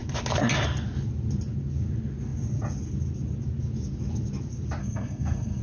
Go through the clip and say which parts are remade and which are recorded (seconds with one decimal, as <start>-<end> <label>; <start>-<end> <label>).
0.0-4.8 recorded; 4.8-5.6 remade